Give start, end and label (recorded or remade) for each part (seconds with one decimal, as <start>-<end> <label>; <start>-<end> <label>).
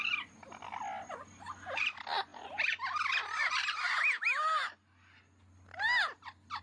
0.0-6.6 recorded